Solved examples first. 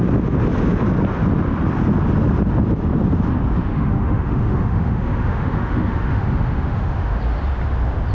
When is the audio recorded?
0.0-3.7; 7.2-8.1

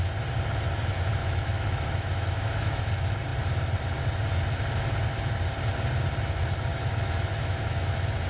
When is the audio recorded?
0.0-1.2; 2.8-6.7; 7.9-8.3

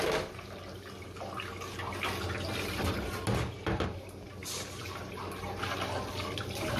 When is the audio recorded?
0.0-4.4; 5.2-6.8

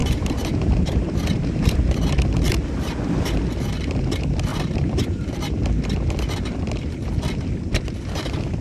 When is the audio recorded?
2.1-4.5; 5.5-8.6

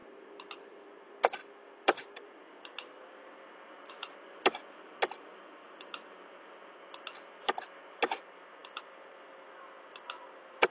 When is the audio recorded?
0.0-10.7

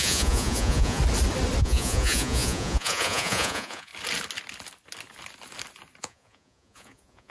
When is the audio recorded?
1.0-1.6; 3.9-6.0

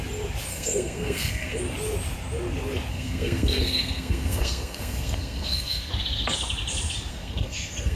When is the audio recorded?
0.0-0.5; 1.6-2.9; 5.9-7.1